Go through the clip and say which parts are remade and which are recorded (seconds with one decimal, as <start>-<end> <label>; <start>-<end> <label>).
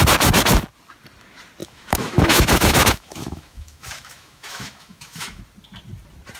0.0-1.6 recorded; 1.6-5.4 remade; 5.4-6.4 recorded